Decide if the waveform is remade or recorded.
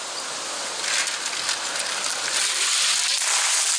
recorded